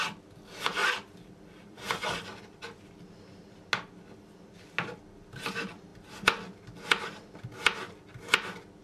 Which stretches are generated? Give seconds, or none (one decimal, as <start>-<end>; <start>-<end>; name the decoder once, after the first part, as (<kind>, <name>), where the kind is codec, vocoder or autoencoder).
0.8-2.8 (vocoder, BigVGAN v2)